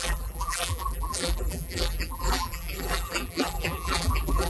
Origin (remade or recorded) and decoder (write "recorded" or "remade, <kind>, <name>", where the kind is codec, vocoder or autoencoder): remade, vocoder, BigVGAN v2